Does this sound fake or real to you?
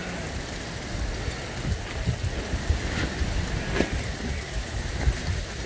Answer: real